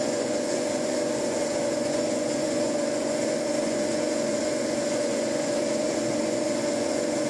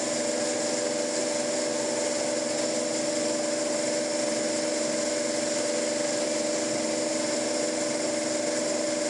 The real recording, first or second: second